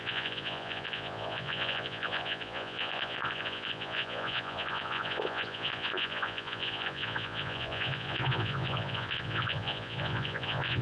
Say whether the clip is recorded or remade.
remade